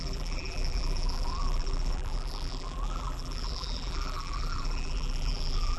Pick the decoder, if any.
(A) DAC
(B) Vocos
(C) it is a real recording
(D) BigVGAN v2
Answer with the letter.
D